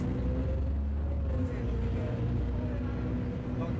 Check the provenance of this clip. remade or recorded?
recorded